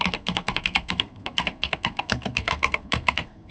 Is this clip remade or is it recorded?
remade